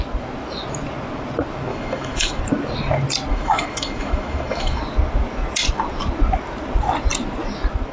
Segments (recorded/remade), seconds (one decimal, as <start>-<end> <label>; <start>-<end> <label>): 0.0-1.7 recorded; 1.7-2.4 remade; 2.4-3.3 recorded; 3.3-4.8 remade; 4.8-7.9 recorded